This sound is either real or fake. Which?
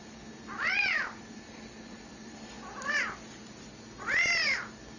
real